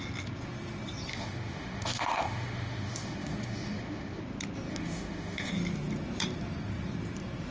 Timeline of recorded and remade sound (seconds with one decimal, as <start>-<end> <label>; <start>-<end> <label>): 0.0-1.1 recorded; 1.1-4.2 remade; 4.2-4.7 recorded; 4.7-5.5 remade; 5.5-7.5 recorded